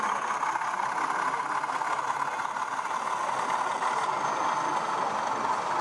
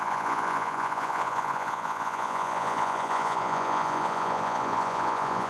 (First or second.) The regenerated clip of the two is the second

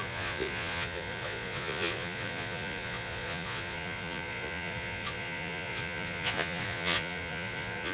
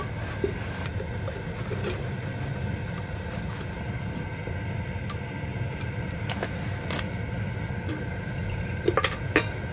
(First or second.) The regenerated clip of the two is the first